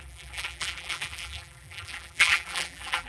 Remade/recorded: remade